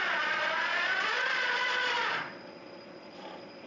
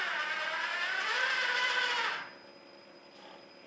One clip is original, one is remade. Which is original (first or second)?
second